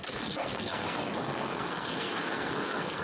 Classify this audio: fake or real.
fake